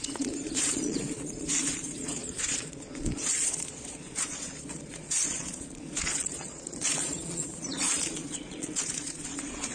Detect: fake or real fake